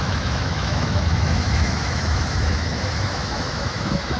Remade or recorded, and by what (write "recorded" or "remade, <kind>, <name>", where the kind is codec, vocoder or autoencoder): remade, autoencoder, DAC-VAE